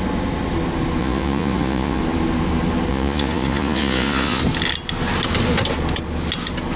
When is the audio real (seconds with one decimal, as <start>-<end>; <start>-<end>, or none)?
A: 0.0-1.0; 2.0-2.9; 4.4-6.8